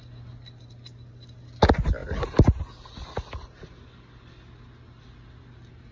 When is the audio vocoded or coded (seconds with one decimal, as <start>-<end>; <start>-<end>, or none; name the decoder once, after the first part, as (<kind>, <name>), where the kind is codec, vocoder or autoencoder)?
none